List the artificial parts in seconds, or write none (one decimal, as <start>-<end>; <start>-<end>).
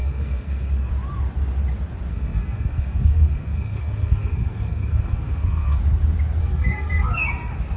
0.0-0.9; 2.1-5.8; 6.4-7.3